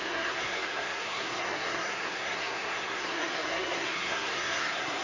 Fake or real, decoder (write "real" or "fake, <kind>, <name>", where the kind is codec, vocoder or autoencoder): fake, codec, SNAC